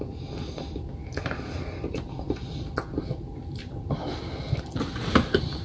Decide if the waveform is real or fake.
real